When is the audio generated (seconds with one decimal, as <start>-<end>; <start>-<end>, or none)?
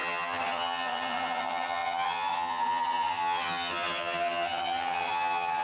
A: 0.0-5.6